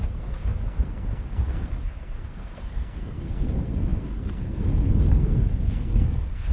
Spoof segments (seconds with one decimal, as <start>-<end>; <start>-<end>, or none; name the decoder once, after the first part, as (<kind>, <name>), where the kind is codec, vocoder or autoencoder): 0.0-6.5 (codec, SNAC)